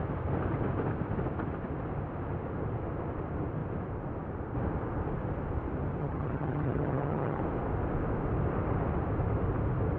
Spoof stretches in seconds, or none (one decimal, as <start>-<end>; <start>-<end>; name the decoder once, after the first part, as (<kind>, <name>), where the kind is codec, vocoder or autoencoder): 6.0-7.4 (vocoder, HiFi-GAN)